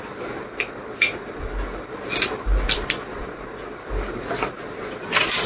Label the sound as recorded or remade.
recorded